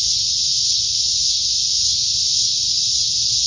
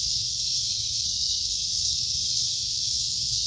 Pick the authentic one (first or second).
first